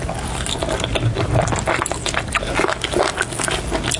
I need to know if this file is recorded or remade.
recorded